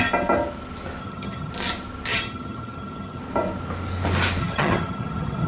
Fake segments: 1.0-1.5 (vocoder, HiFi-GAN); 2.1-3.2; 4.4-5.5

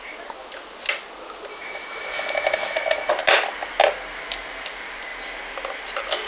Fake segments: 1.5-3.1 (autoencoder, DAC-VAE)

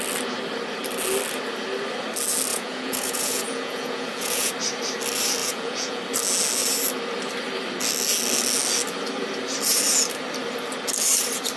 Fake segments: 2.5-4.5 (vocoder, Vocos); 5.4-6.0